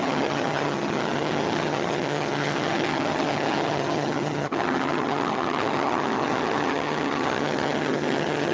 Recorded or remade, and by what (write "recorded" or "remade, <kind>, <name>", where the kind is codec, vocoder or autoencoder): remade, vocoder, HiFi-GAN